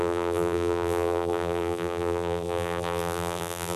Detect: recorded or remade remade